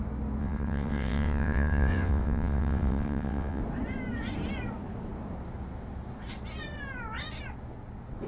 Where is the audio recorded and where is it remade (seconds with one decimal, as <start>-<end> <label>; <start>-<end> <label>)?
0.0-0.4 recorded; 0.4-3.6 remade; 3.6-8.3 recorded

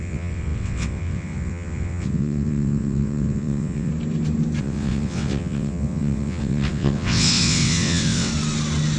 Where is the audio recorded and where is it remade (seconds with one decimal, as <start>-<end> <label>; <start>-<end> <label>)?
0.0-3.9 remade; 3.9-4.6 recorded; 4.6-8.3 remade; 8.3-9.0 recorded

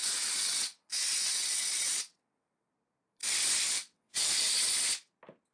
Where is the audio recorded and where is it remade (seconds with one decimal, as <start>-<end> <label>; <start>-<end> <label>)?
0.0-2.7 remade; 2.7-3.2 recorded; 3.2-4.7 remade; 4.7-5.5 recorded